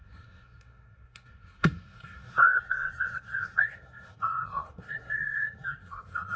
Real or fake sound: fake